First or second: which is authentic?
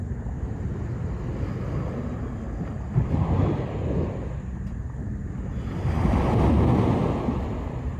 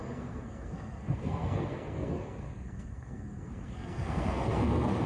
first